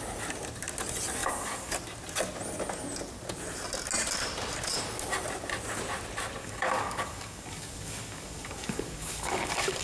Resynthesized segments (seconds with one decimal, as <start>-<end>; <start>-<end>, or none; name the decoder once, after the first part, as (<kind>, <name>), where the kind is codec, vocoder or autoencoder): 1.2-1.7 (codec, DAC); 6.4-9.8